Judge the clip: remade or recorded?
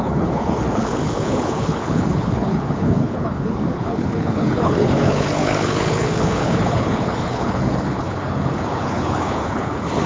remade